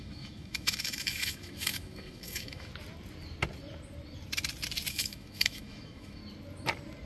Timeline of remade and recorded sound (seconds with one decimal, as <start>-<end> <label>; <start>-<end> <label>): 0.0-2.7 remade; 2.7-4.9 recorded; 4.9-6.2 remade; 6.2-7.1 recorded

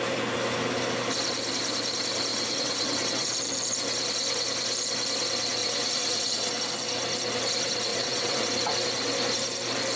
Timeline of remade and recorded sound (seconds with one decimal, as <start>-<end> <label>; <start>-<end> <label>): 0.0-2.3 recorded; 2.3-3.3 remade; 3.3-5.6 recorded; 5.6-6.6 remade; 6.6-7.9 recorded; 7.9-8.5 remade; 8.5-10.0 recorded

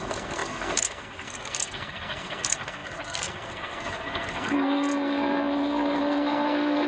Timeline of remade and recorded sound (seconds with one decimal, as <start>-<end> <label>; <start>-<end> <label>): 0.0-6.9 remade

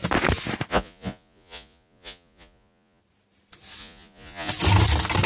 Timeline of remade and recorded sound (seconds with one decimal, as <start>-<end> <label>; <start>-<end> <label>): 0.0-0.7 recorded; 0.7-3.0 remade; 3.0-3.8 recorded; 3.8-4.5 remade; 4.5-5.3 recorded

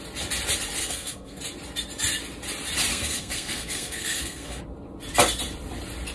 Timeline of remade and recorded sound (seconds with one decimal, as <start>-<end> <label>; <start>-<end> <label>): 0.0-0.8 recorded; 0.8-1.4 remade; 1.4-2.9 recorded; 2.9-4.6 remade; 4.6-6.1 recorded

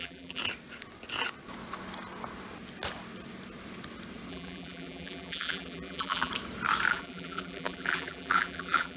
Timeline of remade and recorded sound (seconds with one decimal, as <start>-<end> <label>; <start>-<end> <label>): 0.0-0.4 remade; 0.4-4.3 recorded; 4.3-6.3 remade; 6.3-6.9 recorded; 6.9-9.0 remade

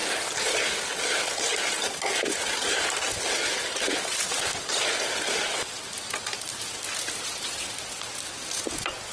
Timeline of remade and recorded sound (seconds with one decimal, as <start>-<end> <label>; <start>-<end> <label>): 0.0-9.1 recorded

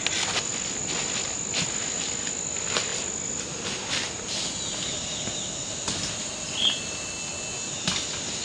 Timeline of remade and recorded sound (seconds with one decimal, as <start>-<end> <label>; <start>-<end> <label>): 0.0-8.4 recorded